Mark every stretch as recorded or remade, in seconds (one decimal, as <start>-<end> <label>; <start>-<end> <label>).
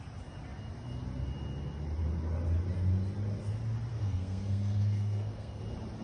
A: 0.0-3.9 recorded; 3.9-5.6 remade; 5.6-6.0 recorded